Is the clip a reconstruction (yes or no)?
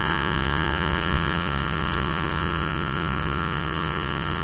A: yes